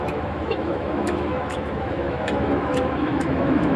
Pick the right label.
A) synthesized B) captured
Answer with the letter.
A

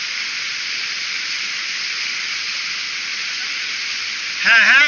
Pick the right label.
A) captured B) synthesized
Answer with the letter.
A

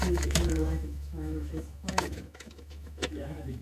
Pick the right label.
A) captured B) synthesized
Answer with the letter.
B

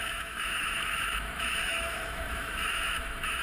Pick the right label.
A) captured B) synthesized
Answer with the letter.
B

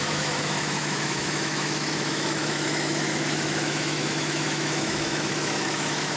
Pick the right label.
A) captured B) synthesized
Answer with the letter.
B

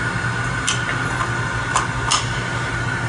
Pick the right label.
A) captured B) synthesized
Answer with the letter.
A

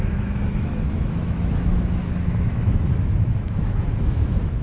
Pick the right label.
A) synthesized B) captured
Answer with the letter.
A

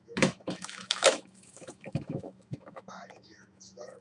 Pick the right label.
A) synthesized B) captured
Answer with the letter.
A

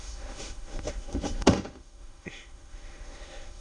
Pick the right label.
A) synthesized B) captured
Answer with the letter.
A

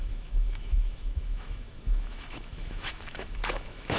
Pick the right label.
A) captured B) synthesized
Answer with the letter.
B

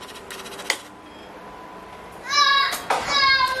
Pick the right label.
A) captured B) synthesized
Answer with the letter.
A